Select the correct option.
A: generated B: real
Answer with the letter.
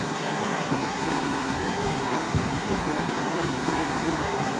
A